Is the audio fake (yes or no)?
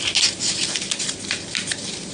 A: no